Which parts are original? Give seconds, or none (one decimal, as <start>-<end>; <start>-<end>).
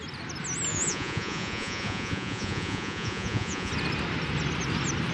0.0-0.7; 3.7-5.1